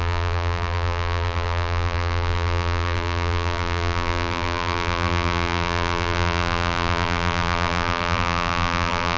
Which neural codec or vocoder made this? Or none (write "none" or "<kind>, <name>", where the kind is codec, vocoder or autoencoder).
vocoder, BigVGAN v2